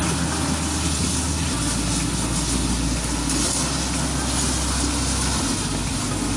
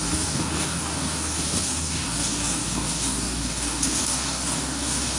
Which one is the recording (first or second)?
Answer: first